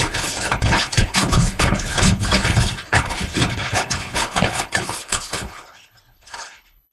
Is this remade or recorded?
remade